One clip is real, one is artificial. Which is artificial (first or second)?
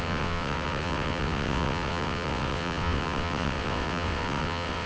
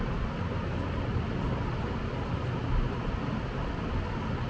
first